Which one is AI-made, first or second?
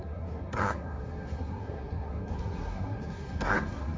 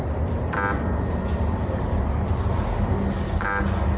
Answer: first